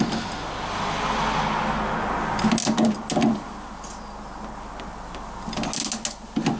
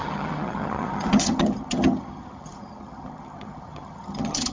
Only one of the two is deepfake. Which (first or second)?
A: second